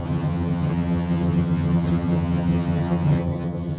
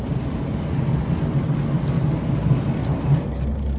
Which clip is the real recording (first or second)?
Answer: second